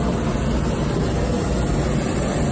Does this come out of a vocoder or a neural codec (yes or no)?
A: no